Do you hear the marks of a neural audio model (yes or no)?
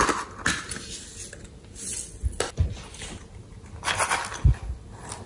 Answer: no